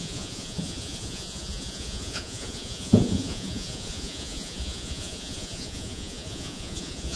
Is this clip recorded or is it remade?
remade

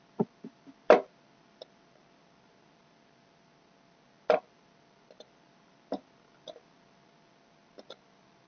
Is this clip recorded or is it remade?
recorded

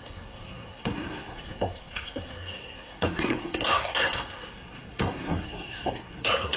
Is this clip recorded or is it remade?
remade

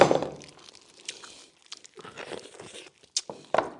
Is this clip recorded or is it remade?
recorded